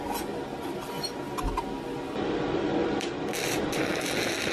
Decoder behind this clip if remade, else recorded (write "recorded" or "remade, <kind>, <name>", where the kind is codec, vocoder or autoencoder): recorded